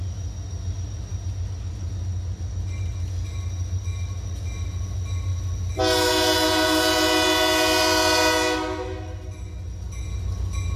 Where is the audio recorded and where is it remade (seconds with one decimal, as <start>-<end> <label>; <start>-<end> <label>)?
0.0-10.8 recorded